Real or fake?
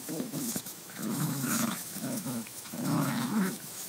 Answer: fake